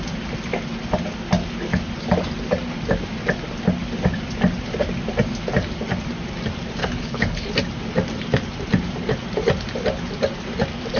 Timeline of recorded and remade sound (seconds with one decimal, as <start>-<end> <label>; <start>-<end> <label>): 0.0-6.8 recorded; 6.8-7.5 remade; 7.5-11.0 recorded